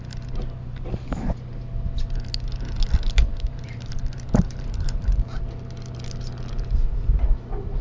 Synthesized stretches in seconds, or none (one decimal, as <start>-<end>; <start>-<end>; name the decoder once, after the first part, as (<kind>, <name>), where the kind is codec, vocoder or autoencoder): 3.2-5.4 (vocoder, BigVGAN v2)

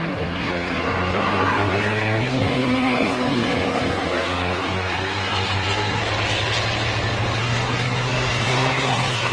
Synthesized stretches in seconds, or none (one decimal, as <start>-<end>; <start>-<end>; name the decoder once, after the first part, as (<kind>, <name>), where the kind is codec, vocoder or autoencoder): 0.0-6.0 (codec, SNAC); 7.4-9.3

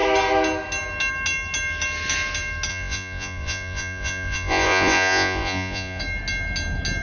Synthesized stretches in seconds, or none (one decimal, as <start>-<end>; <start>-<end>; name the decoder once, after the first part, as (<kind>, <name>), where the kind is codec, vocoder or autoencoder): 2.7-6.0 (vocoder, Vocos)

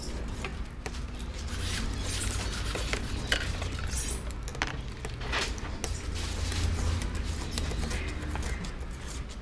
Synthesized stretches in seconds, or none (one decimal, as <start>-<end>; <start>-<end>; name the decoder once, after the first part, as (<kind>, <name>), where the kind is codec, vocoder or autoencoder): none